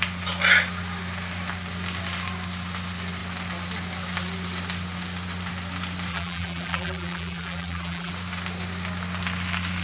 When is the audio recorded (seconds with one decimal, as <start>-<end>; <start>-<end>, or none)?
0.0-6.1; 8.1-9.8